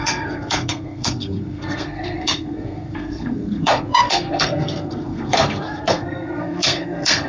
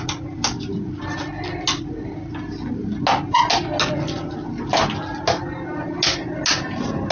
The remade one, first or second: first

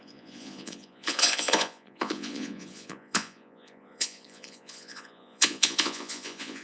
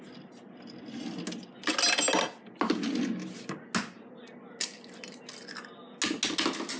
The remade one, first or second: first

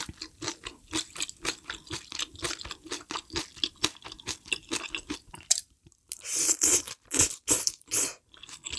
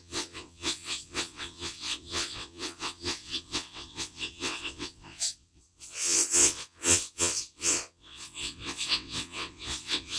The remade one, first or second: second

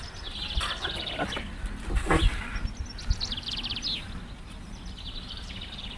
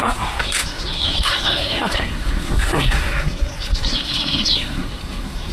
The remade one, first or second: second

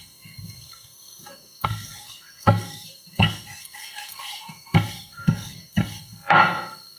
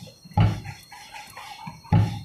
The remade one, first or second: first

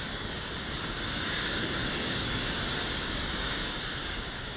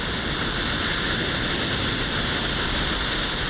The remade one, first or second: first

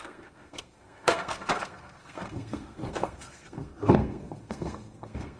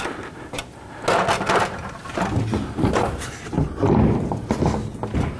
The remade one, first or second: first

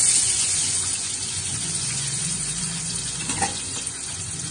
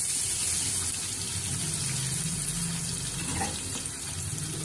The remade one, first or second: first